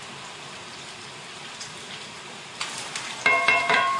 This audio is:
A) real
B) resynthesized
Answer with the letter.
B